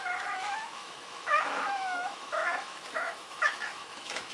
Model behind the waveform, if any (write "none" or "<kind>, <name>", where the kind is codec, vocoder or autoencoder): autoencoder, DAC-VAE